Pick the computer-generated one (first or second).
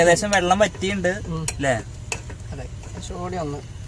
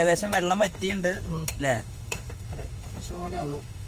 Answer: second